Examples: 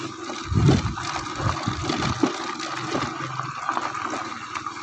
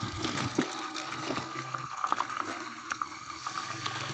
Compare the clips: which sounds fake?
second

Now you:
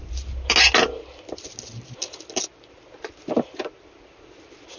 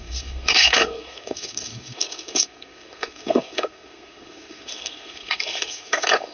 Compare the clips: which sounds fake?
second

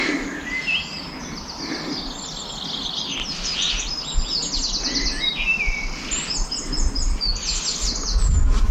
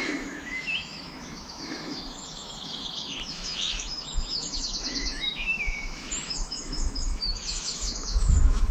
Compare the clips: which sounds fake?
second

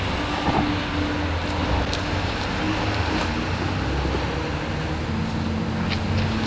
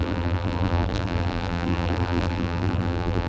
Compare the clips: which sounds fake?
second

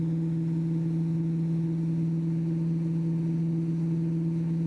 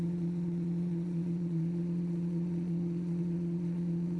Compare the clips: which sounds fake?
second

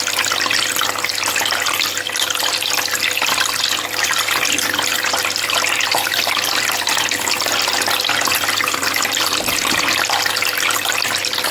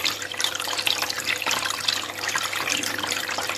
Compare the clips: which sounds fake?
second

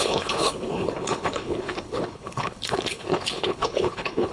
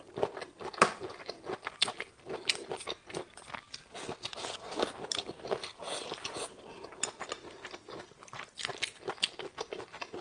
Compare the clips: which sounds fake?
first